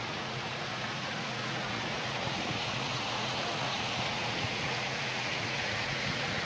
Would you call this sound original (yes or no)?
no